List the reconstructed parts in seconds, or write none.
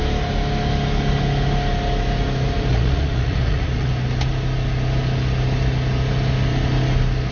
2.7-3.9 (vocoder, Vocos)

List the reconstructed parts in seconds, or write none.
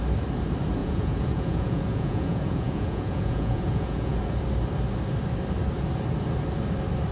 0.8-4.2 (vocoder, Vocos)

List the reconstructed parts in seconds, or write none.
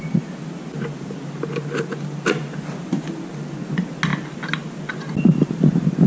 none